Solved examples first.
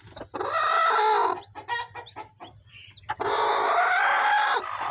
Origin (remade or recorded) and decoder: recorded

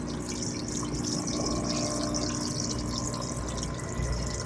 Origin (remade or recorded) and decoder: recorded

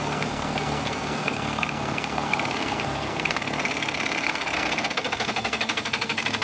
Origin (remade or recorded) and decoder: remade, codec, SNAC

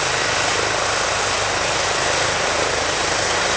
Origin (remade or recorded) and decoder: recorded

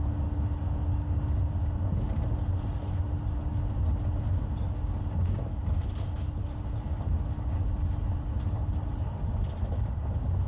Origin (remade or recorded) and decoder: recorded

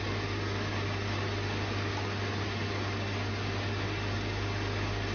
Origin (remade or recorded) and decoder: recorded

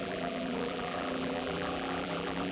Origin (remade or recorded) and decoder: remade, vocoder, BigVGAN v2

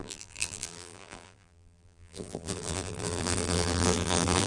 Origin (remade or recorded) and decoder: remade, vocoder, BigVGAN v2